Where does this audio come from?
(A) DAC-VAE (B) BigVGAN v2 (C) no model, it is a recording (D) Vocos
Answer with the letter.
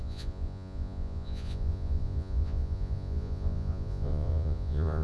D